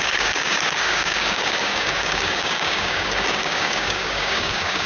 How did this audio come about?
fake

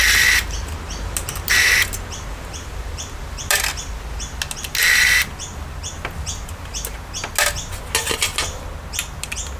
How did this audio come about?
real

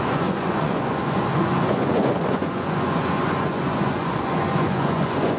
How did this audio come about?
fake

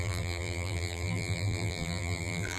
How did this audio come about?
fake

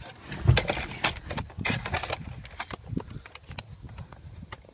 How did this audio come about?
real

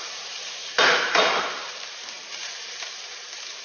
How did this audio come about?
fake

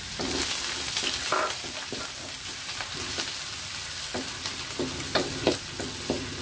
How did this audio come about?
real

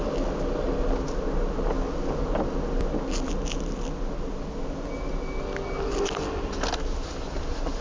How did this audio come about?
real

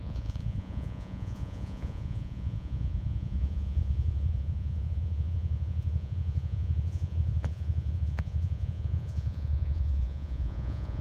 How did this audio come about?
fake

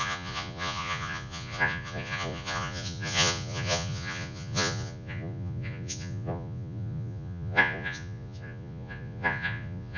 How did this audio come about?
fake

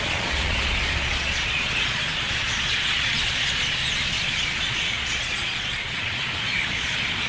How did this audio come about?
fake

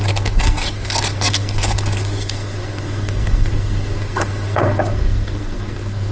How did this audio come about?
fake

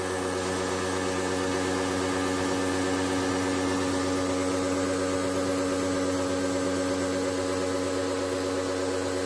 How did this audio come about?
real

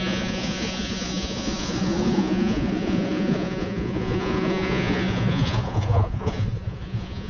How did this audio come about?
fake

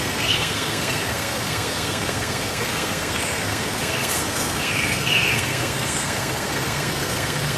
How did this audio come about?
fake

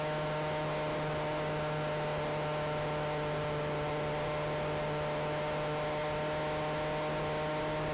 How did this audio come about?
real